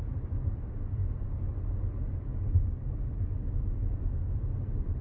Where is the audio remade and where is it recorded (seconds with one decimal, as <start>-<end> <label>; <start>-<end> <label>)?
0.0-5.0 recorded

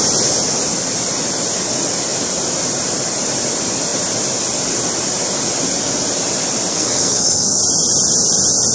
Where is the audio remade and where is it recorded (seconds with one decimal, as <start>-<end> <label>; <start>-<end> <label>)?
0.0-6.7 recorded; 6.7-7.6 remade; 7.6-8.7 recorded